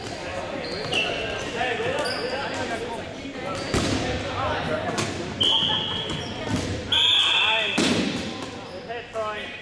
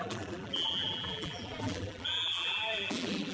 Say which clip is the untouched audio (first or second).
first